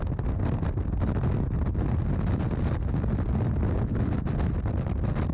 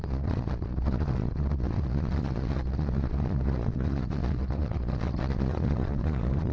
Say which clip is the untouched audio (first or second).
first